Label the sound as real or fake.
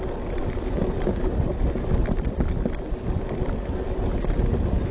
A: real